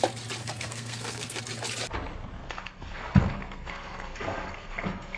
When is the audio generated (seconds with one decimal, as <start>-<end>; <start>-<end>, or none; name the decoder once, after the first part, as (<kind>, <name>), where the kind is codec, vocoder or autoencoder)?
0.4-1.4 (codec, SNAC); 2.4-5.2